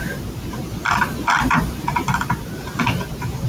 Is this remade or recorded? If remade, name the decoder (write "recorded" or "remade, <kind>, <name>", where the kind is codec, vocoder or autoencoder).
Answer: remade, vocoder, BigVGAN v2